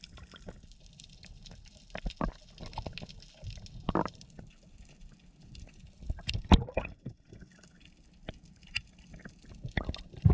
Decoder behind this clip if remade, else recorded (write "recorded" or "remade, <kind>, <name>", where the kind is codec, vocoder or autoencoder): recorded